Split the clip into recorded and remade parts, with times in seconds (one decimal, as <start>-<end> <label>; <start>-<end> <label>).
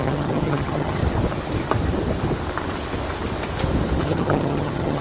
0.0-1.0 remade; 1.0-4.0 recorded; 4.0-5.0 remade